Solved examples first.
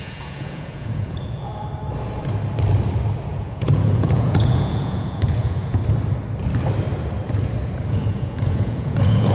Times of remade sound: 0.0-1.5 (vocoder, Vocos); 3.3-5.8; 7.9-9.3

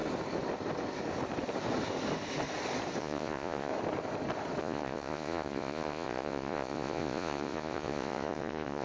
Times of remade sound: 3.0-3.7 (vocoder, Vocos); 4.6-8.8

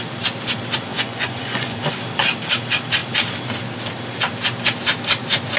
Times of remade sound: 0.9-2.0 (vocoder, Vocos)

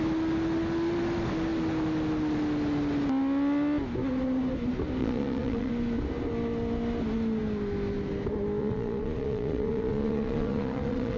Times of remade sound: 5.0-5.7 (vocoder, Vocos); 8.6-11.2

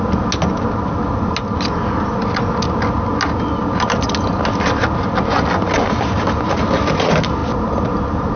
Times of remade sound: none

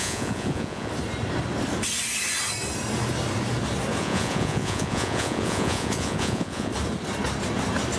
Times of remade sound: 0.0-0.9 (vocoder, Vocos); 4.0-6.7

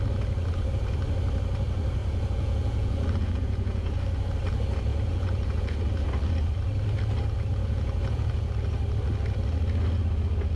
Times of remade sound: 2.0-4.0 (vocoder, Vocos); 4.9-5.8; 7.6-8.5